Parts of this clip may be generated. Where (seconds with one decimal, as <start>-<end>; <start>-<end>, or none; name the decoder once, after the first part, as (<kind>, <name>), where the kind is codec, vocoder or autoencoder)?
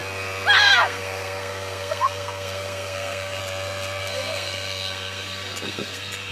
0.6-3.4 (codec, SNAC); 4.0-6.3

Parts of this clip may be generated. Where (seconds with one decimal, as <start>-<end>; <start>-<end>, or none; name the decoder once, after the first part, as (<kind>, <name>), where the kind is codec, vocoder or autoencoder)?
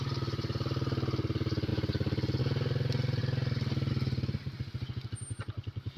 none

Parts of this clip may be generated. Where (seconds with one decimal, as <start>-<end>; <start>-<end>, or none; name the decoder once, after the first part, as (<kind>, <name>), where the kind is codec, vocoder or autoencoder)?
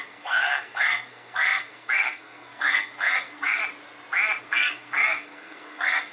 0.0-3.6 (codec, SNAC); 4.4-6.1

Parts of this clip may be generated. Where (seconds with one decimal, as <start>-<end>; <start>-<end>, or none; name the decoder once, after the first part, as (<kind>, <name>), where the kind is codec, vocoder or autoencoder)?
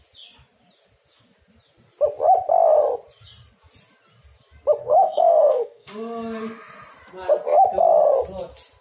4.8-5.9 (codec, SNAC)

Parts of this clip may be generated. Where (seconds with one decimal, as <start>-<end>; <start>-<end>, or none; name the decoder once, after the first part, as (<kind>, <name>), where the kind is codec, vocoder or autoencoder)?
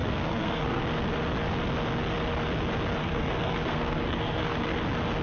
0.0-0.8 (codec, SNAC); 3.0-4.8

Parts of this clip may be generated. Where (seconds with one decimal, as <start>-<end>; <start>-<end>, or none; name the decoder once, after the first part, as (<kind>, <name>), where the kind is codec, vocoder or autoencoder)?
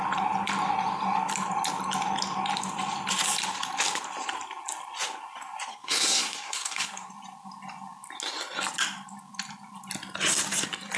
5.7-7.1 (codec, SNAC)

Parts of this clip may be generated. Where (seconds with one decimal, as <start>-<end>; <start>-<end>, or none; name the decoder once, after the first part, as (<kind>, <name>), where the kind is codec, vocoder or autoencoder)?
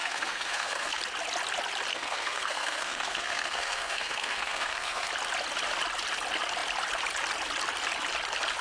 0.0-1.0 (codec, SNAC); 1.9-5.1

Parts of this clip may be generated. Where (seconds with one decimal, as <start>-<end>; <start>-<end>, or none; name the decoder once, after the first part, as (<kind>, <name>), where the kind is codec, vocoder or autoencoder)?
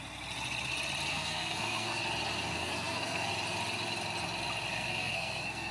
1.1-2.0 (codec, SNAC); 2.5-3.3; 4.7-5.7